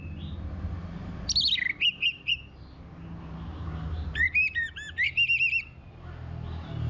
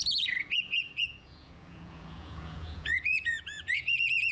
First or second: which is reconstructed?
second